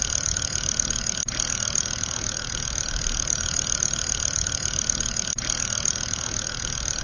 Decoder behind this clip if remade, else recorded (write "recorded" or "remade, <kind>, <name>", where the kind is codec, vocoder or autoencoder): recorded